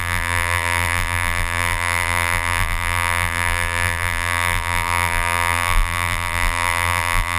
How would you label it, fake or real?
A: fake